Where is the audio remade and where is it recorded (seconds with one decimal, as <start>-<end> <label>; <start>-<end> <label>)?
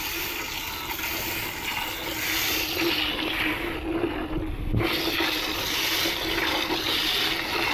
0.0-7.7 recorded